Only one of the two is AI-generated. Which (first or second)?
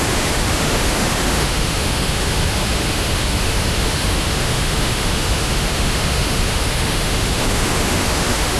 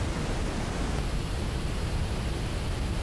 first